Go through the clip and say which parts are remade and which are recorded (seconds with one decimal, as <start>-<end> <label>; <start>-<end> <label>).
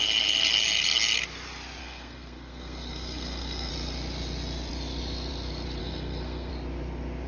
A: 0.0-1.8 recorded; 1.8-3.7 remade; 3.7-5.8 recorded; 5.8-6.5 remade; 6.5-7.3 recorded